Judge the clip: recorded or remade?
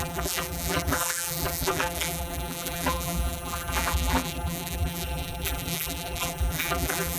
remade